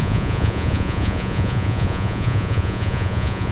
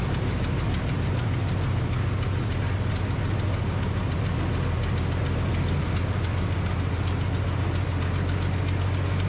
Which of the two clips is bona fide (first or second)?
second